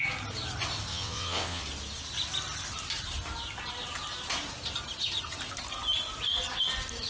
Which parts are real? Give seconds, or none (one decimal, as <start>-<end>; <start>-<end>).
0.0-0.9; 1.6-7.1